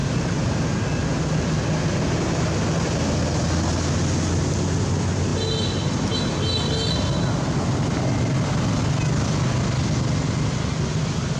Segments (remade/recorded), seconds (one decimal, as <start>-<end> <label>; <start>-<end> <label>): 0.0-0.6 remade; 0.6-11.4 recorded